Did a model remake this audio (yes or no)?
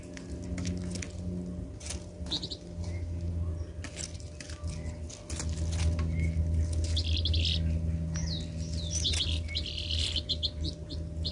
no